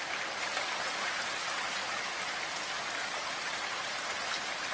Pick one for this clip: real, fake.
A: real